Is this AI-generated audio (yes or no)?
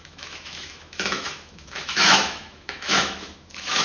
yes